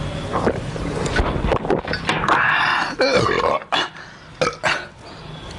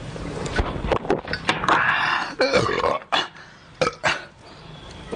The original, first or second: first